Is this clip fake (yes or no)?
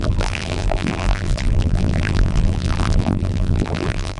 yes